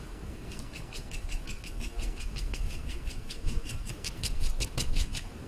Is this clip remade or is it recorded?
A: remade